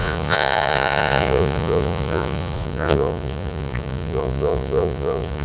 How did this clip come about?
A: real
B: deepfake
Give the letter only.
B